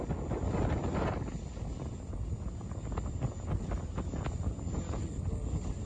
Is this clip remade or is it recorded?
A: recorded